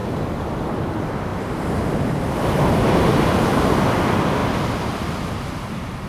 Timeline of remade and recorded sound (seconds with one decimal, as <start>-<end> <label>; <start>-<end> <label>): 0.0-6.1 recorded